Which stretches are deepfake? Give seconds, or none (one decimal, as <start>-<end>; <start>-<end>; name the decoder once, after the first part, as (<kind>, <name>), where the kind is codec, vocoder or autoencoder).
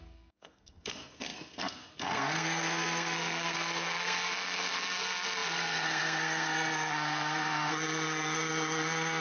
0.0-9.2 (codec, SNAC)